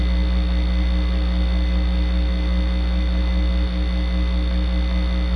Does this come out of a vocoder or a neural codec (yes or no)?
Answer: no